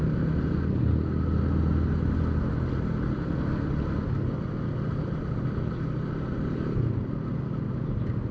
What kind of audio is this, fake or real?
real